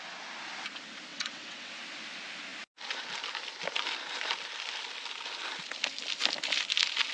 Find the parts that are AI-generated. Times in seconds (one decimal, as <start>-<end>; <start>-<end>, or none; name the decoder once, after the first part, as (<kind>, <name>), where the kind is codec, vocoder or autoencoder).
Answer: 1.1-1.7 (vocoder, WaveNeXt)